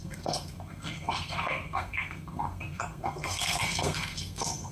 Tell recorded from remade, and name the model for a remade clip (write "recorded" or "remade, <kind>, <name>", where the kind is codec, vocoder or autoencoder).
remade, codec, SNAC